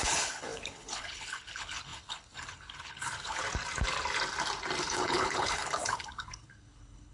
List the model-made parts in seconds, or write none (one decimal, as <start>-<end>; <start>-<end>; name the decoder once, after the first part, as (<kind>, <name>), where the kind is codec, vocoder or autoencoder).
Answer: 0.0-3.4 (codec, HILCodec); 4.8-7.1

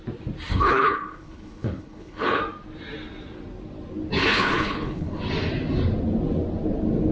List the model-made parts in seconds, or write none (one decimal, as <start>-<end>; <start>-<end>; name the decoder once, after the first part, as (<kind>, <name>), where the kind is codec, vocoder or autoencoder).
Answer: 0.5-2.4 (codec, HILCodec); 4.2-5.2

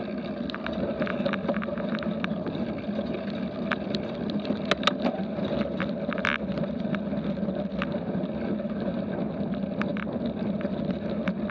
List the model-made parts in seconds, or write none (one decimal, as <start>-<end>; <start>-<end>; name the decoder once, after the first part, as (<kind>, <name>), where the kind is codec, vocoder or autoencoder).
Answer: none